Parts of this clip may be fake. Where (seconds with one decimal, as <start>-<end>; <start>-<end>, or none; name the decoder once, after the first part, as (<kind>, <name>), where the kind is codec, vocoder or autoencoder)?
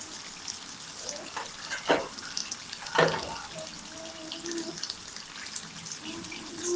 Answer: none